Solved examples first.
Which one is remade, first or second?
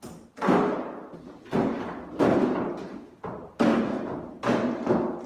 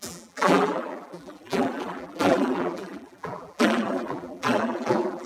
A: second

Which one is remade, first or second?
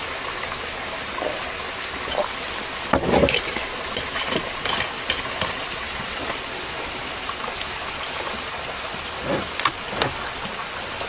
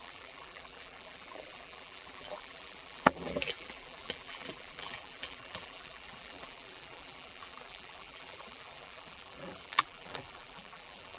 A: second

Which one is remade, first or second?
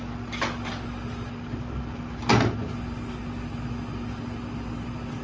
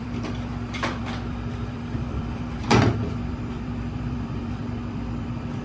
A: second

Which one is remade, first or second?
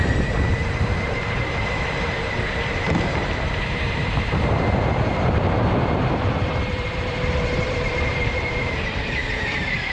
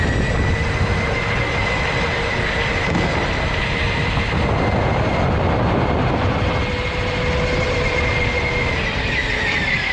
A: first